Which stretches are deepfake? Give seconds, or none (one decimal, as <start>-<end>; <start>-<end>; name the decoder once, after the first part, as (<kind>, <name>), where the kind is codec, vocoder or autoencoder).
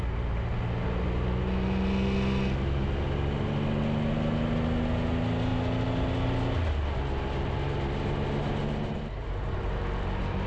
none